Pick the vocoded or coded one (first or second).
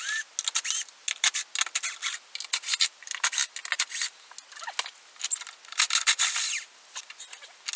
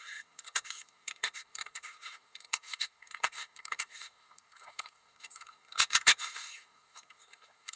second